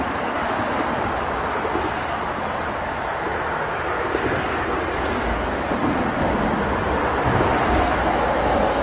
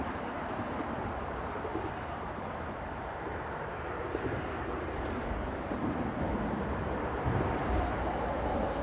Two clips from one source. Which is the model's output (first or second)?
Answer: second